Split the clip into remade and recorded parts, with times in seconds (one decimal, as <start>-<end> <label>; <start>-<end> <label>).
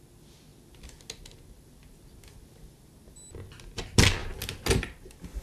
0.0-5.4 recorded